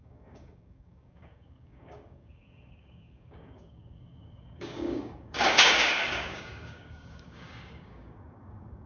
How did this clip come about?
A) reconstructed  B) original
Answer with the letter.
A